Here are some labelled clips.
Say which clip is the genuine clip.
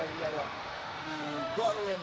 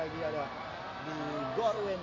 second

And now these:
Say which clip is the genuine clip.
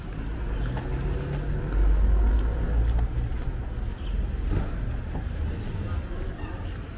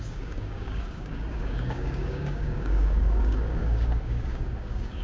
first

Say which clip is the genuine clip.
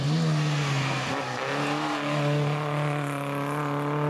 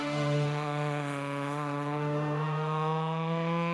first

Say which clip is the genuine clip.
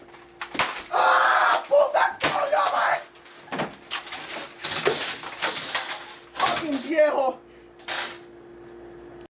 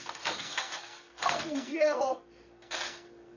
first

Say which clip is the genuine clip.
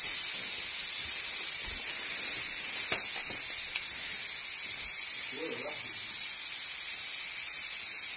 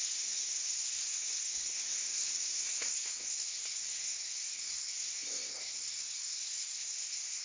first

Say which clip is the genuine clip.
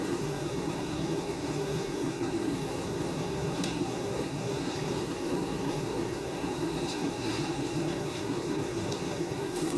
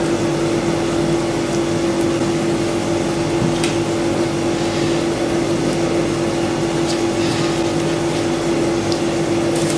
second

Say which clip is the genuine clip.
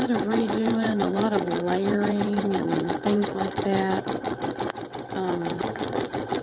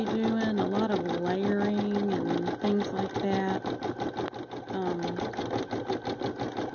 second